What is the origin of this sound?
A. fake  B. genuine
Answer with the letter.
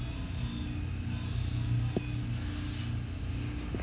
B